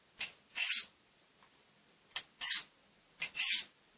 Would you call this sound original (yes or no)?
yes